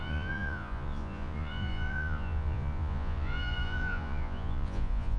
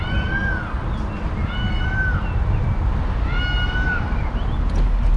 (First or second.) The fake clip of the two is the first